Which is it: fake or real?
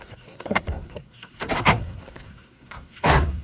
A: fake